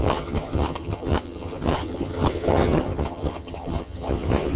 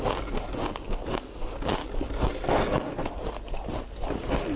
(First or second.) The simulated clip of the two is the first